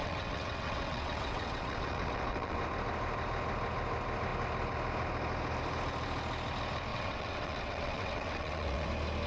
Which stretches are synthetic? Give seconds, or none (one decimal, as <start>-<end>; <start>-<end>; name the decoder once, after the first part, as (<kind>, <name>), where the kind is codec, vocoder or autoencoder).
0.0-2.6 (vocoder, WaveNeXt); 6.9-8.9